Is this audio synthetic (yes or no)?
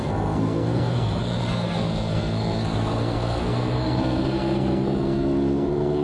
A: yes